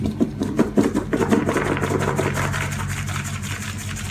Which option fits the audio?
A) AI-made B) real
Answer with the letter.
B